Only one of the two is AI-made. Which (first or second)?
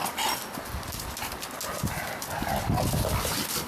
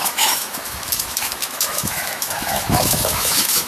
second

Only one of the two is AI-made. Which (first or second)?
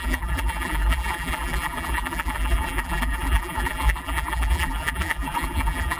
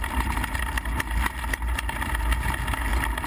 first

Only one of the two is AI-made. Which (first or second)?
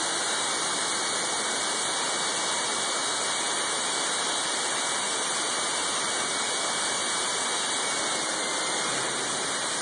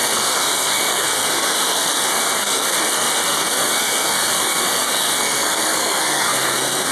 second